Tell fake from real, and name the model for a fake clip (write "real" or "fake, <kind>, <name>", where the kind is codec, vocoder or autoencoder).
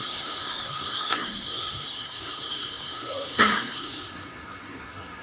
fake, codec, SNAC